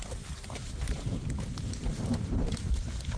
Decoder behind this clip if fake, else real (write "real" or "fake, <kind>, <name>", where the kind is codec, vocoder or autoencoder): fake, vocoder, BigVGAN v2